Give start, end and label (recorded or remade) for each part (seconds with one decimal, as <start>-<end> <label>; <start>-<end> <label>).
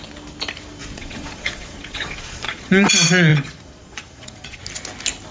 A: 0.0-0.8 recorded; 0.8-2.9 remade; 2.9-3.3 recorded; 3.3-4.6 remade; 4.6-5.3 recorded